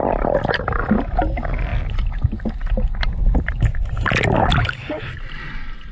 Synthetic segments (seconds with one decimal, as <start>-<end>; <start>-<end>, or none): 4.6-5.1